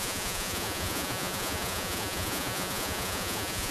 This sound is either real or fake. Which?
fake